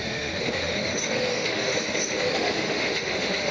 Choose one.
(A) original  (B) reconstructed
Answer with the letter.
B